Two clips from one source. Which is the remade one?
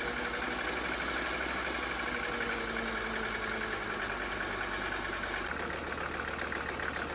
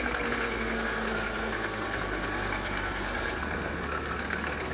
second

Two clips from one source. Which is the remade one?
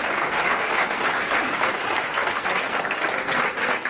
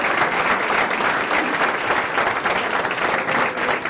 first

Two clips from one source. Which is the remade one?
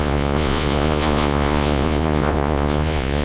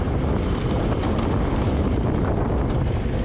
first